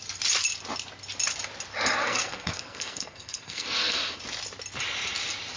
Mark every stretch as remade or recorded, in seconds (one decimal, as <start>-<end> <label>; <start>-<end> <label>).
0.0-2.0 recorded; 2.0-4.2 remade; 4.2-5.6 recorded